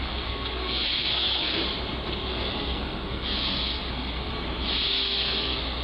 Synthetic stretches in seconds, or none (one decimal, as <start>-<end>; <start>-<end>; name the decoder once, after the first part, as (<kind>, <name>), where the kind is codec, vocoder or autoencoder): 0.0-1.6 (codec, SNAC); 2.3-4.3; 4.9-5.8